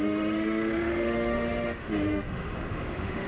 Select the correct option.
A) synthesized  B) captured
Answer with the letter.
A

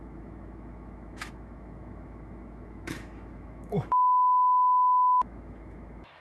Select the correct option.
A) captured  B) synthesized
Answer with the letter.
B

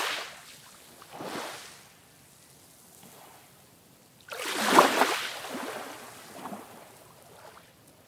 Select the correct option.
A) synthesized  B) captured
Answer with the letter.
B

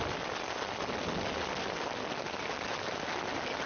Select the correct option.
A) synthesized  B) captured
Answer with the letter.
B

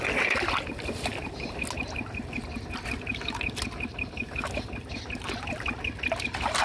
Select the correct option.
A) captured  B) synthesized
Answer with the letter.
A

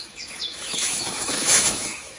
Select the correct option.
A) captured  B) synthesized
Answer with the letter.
B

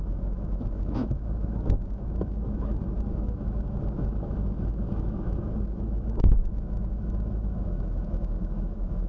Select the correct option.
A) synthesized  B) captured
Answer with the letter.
A